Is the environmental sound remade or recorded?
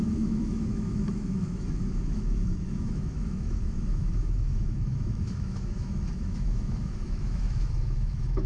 remade